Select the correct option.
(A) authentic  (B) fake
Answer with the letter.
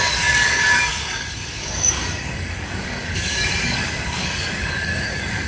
B